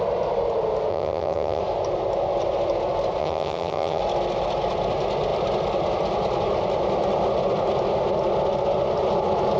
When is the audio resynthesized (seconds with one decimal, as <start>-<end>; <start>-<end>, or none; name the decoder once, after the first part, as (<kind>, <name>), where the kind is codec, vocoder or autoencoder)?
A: 0.9-1.6 (vocoder, HiFi-GAN); 3.2-4.0